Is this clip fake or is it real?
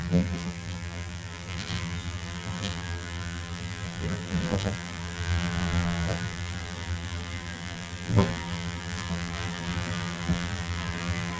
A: fake